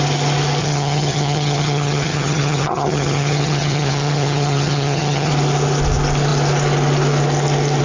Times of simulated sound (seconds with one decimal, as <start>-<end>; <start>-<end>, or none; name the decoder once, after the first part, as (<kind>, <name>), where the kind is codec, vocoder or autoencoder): 0.6-5.3 (vocoder, HiFi-GAN)